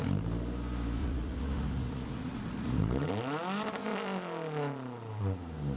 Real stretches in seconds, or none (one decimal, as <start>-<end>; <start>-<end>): 0.0-1.0; 3.1-5.8